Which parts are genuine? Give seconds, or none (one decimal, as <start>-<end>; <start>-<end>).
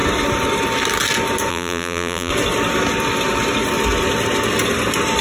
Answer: 0.0-1.5; 2.3-5.2